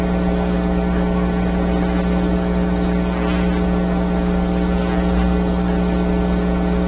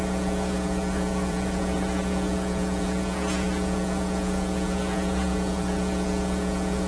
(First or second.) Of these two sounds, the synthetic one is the second